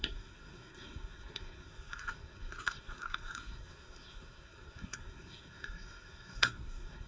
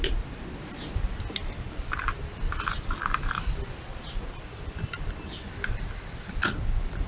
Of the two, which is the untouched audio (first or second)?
second